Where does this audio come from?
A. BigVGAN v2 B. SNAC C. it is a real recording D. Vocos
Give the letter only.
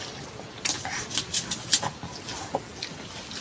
C